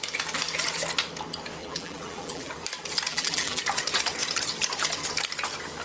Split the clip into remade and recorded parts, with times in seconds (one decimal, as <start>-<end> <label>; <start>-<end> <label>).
0.0-1.6 recorded; 1.6-2.5 remade; 2.5-3.1 recorded; 3.1-3.6 remade; 3.6-5.8 recorded